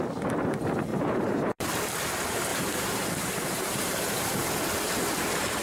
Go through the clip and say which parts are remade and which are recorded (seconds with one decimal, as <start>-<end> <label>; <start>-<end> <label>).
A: 0.0-0.9 recorded; 0.9-1.7 remade; 1.7-2.5 recorded; 2.5-4.6 remade; 4.6-5.6 recorded